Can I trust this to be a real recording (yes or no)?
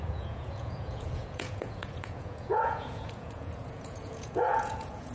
no